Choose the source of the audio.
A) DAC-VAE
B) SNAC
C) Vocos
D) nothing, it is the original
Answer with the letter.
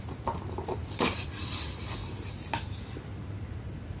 D